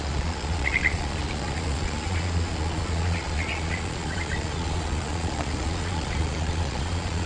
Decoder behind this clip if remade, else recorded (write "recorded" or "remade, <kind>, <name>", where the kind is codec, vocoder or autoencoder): remade, vocoder, Vocos